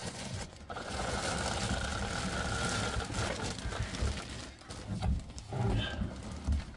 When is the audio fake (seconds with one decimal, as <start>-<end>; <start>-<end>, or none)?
0.0-1.2